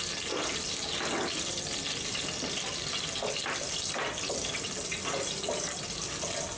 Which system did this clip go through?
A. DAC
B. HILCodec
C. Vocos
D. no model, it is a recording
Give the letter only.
D